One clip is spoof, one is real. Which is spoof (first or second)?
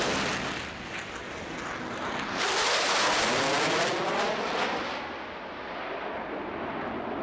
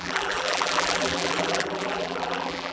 second